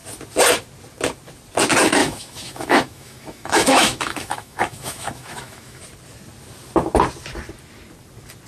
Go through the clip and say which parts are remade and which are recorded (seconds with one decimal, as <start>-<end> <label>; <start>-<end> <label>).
0.0-2.0 recorded; 2.0-5.8 remade; 5.8-8.5 recorded